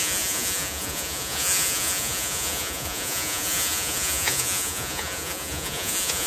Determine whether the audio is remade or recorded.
remade